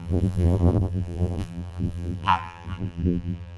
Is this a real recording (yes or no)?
no